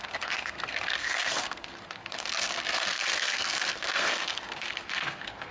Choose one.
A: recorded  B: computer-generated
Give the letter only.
B